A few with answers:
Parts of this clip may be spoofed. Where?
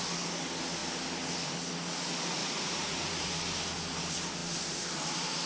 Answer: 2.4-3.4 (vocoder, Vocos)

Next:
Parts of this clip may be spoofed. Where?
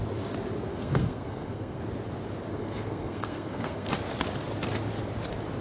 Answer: 0.7-1.8 (codec, SNAC); 2.5-3.9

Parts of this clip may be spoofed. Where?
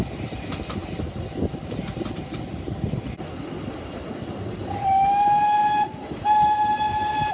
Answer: none